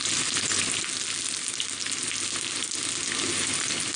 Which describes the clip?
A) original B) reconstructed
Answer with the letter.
A